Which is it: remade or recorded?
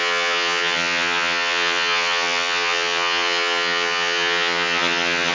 remade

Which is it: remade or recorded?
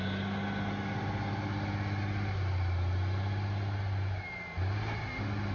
recorded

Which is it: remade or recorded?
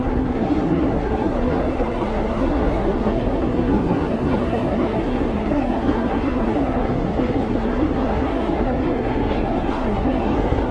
remade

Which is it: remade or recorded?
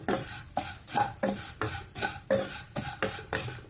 remade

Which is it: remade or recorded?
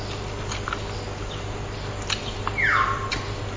recorded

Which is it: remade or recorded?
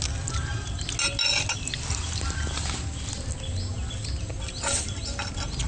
recorded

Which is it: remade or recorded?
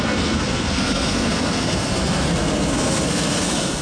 remade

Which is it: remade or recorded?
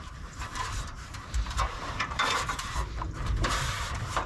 remade